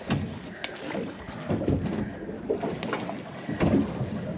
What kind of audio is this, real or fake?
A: real